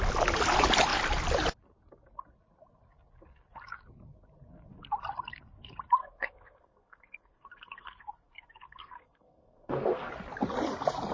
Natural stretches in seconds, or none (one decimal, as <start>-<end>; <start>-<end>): 0.0-6.0; 10.1-11.1